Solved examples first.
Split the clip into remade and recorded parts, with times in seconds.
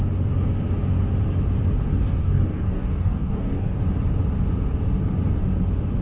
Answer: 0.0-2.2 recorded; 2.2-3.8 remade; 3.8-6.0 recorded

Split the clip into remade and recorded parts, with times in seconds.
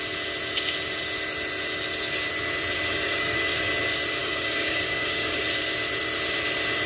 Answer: 0.0-2.9 recorded; 2.9-3.6 remade; 3.6-4.2 recorded; 4.2-5.4 remade; 5.4-6.9 recorded